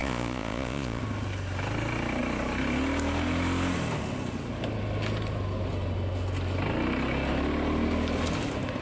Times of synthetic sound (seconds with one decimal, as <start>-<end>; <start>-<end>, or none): 0.0-1.0